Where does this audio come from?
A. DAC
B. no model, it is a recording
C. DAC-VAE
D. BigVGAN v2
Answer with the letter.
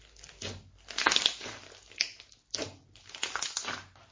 B